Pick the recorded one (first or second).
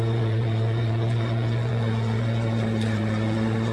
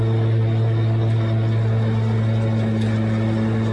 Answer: second